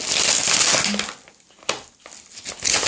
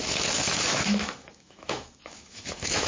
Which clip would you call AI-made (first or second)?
second